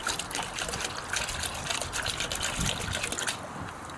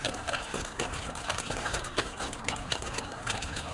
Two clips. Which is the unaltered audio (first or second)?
first